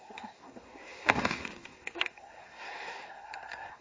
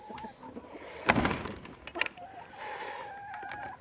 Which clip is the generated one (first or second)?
first